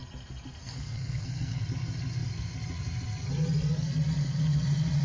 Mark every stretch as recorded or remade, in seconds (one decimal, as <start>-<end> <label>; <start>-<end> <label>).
0.0-0.6 recorded; 0.6-1.6 remade; 1.6-5.0 recorded